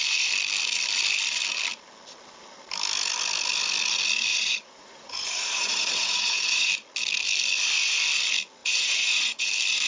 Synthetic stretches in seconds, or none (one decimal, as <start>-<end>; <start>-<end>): 4.3-6.7; 8.6-9.5